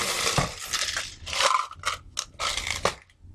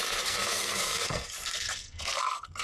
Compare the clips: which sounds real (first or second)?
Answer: first